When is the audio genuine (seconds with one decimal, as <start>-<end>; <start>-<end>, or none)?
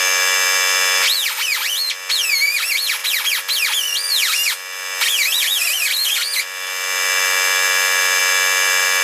0.0-9.0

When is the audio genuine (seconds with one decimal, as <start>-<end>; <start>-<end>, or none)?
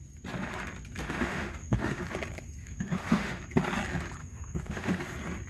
0.0-1.0; 2.0-2.6; 3.4-4.2; 5.0-5.5